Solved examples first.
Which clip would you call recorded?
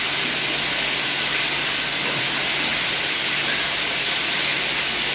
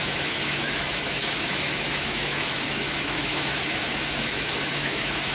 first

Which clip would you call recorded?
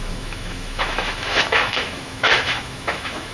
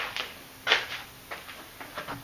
second